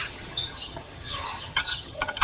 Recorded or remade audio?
remade